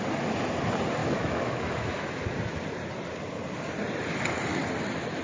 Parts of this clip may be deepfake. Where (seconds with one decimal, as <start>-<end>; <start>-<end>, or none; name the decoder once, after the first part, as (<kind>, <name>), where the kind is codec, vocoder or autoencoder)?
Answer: 1.0-2.2 (autoencoder, DAC-VAE)